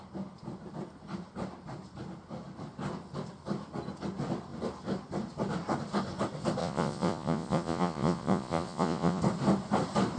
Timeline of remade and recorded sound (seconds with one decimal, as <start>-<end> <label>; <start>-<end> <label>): 0.0-6.6 recorded; 6.6-9.2 remade; 9.2-10.2 recorded